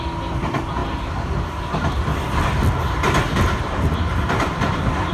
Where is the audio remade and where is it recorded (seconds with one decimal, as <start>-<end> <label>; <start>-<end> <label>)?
0.0-2.1 recorded; 2.1-5.1 remade